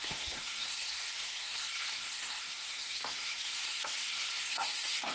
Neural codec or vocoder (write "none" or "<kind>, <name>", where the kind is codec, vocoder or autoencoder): codec, SNAC